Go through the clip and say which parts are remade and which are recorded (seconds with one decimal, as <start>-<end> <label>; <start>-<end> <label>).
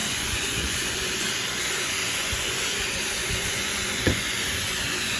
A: 0.0-5.2 remade